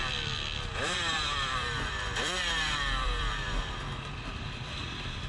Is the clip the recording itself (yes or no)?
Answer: no